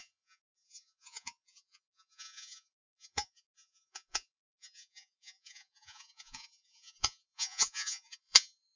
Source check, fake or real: fake